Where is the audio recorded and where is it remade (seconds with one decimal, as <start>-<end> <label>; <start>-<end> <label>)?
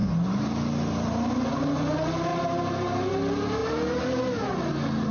0.0-5.1 recorded